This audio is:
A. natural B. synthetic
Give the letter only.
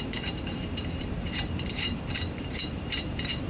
B